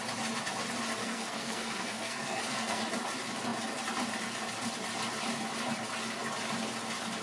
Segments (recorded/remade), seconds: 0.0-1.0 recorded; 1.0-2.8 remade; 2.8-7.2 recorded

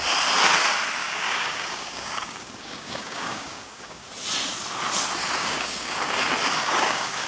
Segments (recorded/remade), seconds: 0.0-1.0 recorded; 1.0-4.1 remade; 4.1-5.4 recorded; 5.4-6.1 remade; 6.1-6.6 recorded; 6.6-7.3 remade